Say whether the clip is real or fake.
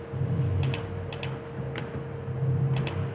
real